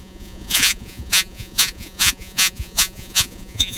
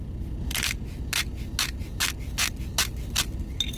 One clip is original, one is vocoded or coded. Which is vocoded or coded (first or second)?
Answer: first